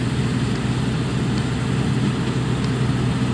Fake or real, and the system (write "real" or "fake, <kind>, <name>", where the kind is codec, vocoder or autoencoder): real